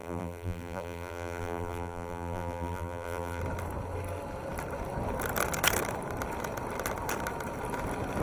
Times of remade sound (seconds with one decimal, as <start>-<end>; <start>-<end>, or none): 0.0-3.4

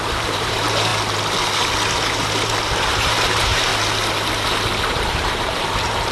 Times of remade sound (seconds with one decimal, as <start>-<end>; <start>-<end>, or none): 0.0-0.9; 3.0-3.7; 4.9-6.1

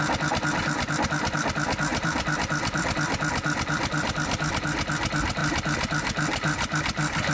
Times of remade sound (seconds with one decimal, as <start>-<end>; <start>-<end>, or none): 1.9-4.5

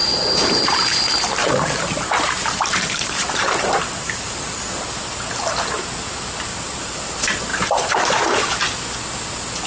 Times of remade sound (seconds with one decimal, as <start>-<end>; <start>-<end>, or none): 0.0-0.9; 1.4-4.4; 6.5-7.0; 7.5-8.1